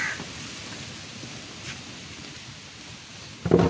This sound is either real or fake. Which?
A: real